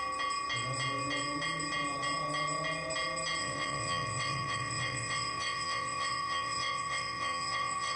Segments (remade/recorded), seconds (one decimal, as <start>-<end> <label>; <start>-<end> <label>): 0.0-3.4 recorded; 3.4-8.0 remade